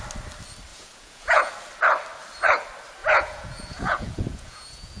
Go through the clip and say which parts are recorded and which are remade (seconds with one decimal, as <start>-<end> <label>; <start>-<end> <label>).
0.0-0.7 recorded; 0.7-1.5 remade; 1.5-3.0 recorded; 3.0-5.0 remade